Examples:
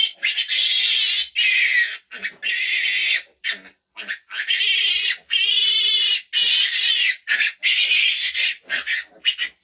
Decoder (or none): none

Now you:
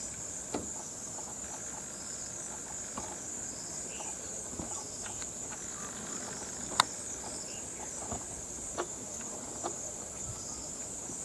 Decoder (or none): none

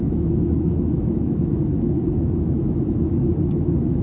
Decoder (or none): autoencoder, DAC-VAE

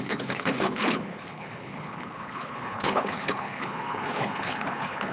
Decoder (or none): codec, HILCodec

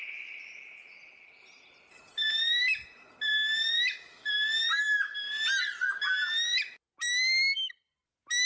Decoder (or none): none